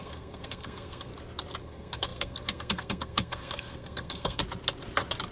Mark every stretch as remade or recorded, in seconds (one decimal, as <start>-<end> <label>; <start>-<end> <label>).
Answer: 0.0-1.1 remade; 1.1-1.6 recorded; 1.6-4.4 remade; 4.4-5.3 recorded